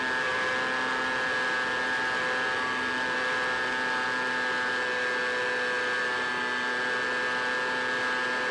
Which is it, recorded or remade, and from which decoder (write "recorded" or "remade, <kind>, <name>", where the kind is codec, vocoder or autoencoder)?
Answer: recorded